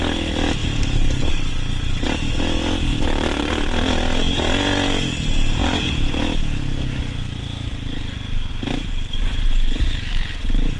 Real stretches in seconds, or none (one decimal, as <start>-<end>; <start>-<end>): 0.0-0.6; 1.3-2.9; 3.5-5.6; 6.2-8.5